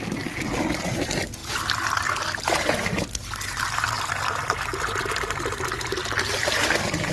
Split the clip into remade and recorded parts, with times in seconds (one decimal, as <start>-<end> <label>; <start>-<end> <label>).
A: 0.0-7.1 recorded